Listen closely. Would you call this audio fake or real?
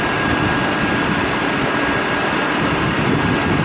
real